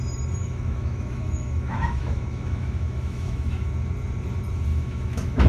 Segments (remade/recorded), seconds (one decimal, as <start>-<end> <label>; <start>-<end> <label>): 0.0-0.4 recorded; 0.4-3.7 remade; 3.7-4.7 recorded; 4.7-5.5 remade